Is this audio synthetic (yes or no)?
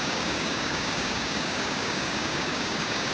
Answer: yes